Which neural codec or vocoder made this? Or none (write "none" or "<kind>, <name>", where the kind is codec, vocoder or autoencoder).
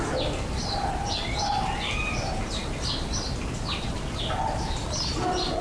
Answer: none